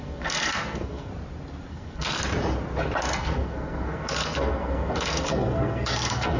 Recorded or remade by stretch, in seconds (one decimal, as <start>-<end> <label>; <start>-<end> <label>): 0.0-1.1 remade; 1.1-1.7 recorded; 1.7-2.2 remade; 2.2-3.0 recorded; 3.0-6.4 remade